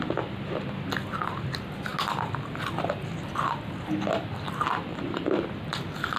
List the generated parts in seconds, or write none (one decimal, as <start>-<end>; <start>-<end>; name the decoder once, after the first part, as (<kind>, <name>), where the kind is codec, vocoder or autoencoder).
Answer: 4.9-5.5 (vocoder, BigVGAN v2)